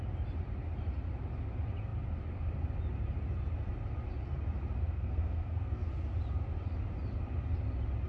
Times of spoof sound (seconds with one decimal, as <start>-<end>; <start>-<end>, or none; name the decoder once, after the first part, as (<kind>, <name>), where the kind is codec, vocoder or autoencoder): 4.8-5.9 (codec, SNAC)